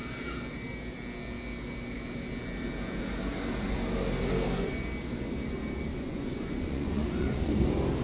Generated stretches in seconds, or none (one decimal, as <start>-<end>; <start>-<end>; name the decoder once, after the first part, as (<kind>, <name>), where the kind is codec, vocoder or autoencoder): 5.9-7.5 (vocoder, Vocos)

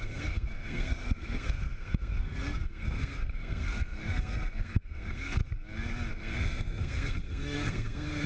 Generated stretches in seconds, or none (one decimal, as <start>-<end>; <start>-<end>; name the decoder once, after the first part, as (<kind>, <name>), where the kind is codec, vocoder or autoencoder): 0.0-5.4 (codec, SNAC); 6.1-8.3